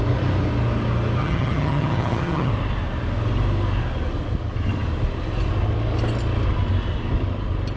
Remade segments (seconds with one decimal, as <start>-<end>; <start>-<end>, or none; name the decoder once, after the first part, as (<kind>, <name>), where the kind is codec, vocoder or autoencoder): 1.2-2.5 (vocoder, HiFi-GAN)